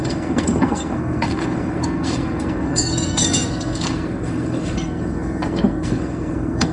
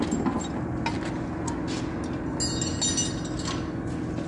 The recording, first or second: second